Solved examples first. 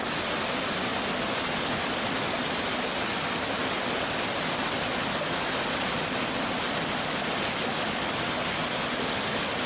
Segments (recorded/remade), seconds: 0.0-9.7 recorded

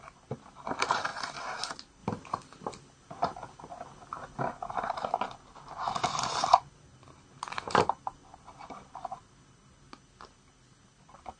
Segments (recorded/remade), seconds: 0.0-11.4 recorded

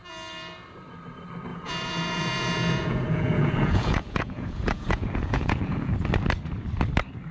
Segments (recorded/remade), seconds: 0.0-1.5 recorded; 1.5-5.9 remade; 5.9-7.3 recorded